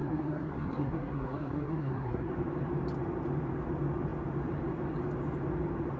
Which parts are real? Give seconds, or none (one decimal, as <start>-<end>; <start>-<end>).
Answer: 2.3-6.0